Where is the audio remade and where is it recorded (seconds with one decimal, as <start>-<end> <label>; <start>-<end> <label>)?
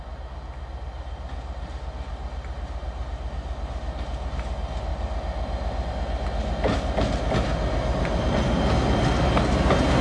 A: 0.0-10.0 recorded